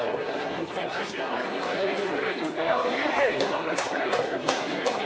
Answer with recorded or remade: remade